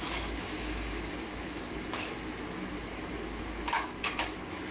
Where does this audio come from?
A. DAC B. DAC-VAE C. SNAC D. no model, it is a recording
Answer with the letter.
B